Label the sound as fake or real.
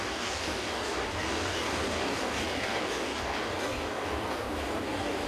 fake